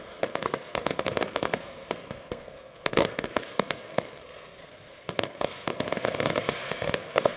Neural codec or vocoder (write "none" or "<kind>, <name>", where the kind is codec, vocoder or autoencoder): codec, SNAC